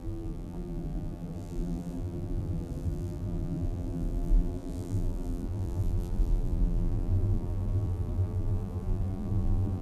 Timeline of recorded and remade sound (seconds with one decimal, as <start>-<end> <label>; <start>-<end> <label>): 0.0-9.8 remade